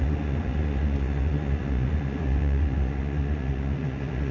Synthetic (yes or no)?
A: yes